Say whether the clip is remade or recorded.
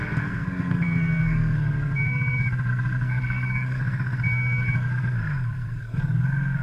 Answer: remade